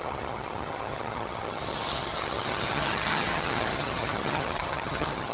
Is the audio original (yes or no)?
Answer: no